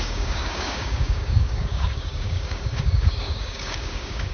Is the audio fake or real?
fake